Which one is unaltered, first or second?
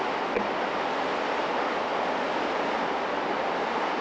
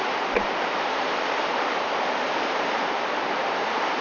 first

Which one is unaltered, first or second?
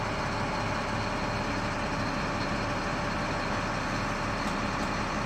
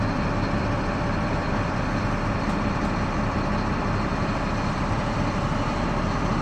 first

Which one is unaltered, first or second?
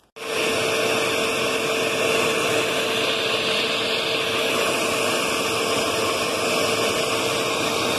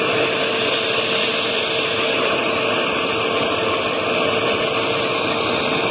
first